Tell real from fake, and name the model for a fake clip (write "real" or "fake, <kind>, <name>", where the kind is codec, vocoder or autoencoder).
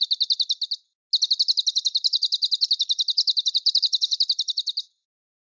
real